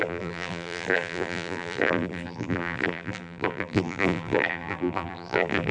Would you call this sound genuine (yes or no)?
no